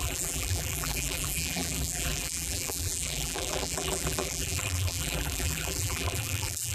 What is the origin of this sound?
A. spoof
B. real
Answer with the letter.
A